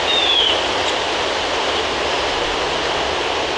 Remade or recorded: recorded